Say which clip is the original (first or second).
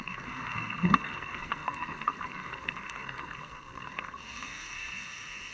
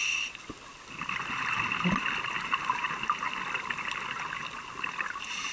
second